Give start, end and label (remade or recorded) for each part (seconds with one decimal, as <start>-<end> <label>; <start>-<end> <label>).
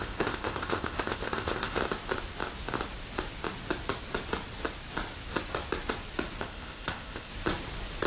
0.0-1.8 remade; 1.8-6.4 recorded; 6.4-7.3 remade; 7.3-8.1 recorded